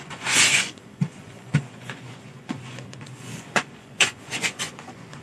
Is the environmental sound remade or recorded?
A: remade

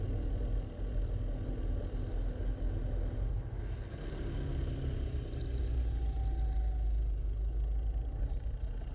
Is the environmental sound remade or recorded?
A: recorded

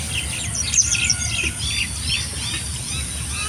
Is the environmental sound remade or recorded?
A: recorded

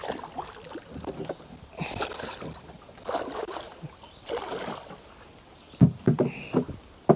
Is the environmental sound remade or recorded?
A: recorded